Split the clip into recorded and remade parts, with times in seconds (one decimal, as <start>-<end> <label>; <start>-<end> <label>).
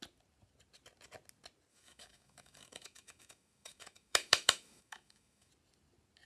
0.0-1.7 recorded; 1.7-5.5 remade; 5.5-6.3 recorded